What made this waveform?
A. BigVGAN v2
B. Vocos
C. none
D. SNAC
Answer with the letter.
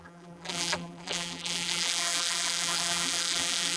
A